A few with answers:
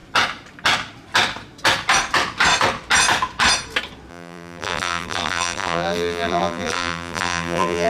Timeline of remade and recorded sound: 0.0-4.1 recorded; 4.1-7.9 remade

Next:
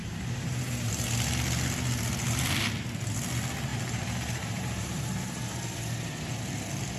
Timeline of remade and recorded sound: 0.0-0.9 remade; 0.9-3.7 recorded; 3.7-5.1 remade; 5.1-7.0 recorded

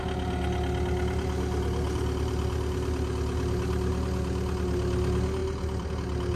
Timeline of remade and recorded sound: 0.0-5.4 recorded; 5.4-5.9 remade; 5.9-6.4 recorded

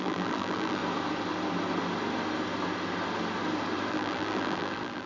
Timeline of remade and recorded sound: 0.0-0.8 remade; 0.8-3.9 recorded; 3.9-5.1 remade